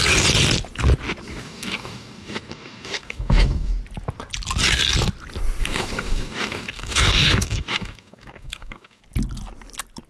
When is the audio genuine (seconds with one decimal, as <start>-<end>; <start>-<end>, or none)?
0.0-1.3; 3.7-5.6; 9.0-10.1